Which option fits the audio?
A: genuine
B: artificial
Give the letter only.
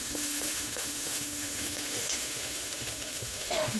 B